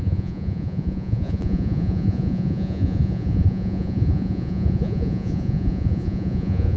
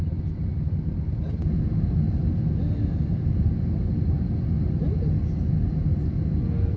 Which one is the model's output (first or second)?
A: first